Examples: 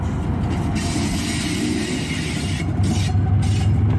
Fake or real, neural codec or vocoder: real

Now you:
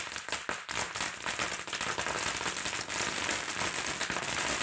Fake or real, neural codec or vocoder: real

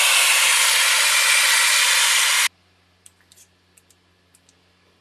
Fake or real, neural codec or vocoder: real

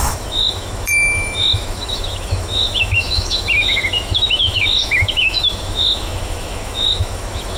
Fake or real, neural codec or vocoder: fake, autoencoder, DAC-VAE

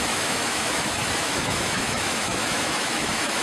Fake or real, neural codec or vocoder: fake, autoencoder, DAC-VAE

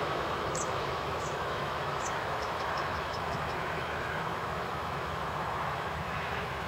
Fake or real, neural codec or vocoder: fake, autoencoder, DAC-VAE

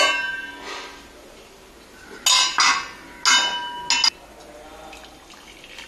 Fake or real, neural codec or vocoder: real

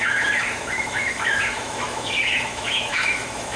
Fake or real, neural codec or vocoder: fake, autoencoder, DAC-VAE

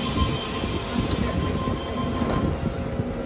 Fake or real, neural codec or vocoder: real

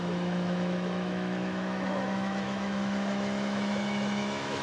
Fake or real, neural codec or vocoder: fake, autoencoder, DAC-VAE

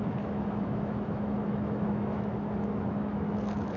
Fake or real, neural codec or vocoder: fake, autoencoder, DAC-VAE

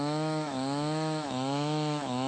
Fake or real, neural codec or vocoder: fake, autoencoder, DAC-VAE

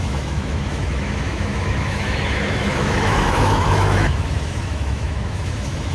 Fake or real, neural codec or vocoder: fake, autoencoder, DAC-VAE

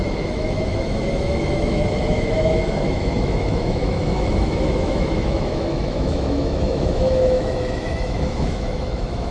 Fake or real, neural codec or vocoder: fake, autoencoder, DAC-VAE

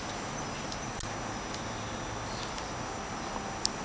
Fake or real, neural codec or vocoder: real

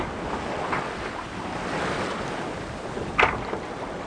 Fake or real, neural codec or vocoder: real